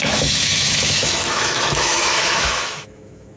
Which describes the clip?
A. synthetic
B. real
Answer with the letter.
A